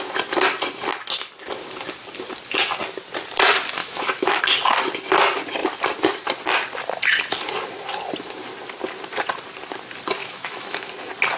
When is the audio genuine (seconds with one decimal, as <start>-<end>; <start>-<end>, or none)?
0.0-3.8; 4.4-10.2; 10.9-11.4